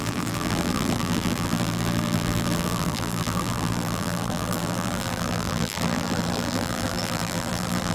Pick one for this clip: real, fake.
fake